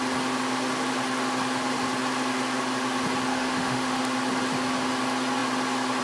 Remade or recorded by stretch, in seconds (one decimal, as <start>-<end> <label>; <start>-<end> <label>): 0.0-3.3 recorded; 3.3-4.0 remade; 4.0-6.0 recorded